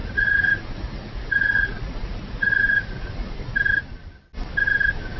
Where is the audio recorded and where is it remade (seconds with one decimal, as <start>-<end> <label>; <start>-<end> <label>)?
0.0-3.1 remade; 3.1-5.2 recorded